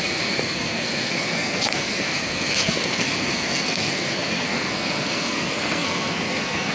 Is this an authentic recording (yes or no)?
no